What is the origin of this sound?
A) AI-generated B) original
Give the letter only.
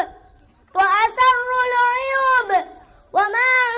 B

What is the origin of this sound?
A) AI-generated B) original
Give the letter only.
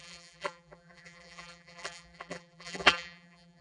A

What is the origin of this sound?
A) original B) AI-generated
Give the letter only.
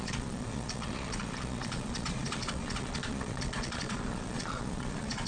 B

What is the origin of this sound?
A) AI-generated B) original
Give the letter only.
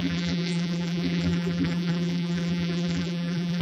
A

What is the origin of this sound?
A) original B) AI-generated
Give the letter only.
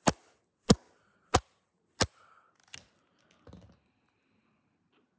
A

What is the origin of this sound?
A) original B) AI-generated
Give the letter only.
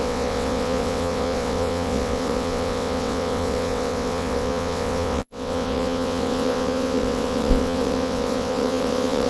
B